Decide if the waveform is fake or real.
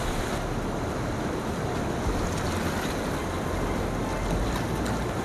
real